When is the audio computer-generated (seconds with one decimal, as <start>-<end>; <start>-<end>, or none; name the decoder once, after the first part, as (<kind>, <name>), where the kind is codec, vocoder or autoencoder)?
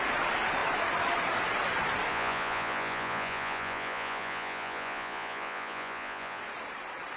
2.1-6.4 (vocoder, Vocos)